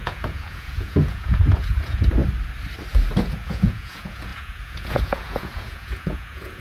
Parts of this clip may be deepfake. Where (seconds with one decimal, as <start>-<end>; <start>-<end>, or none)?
0.0-2.2; 3.2-6.6